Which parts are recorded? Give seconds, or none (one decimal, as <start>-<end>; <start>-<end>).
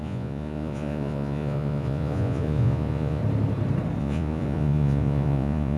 3.2-4.0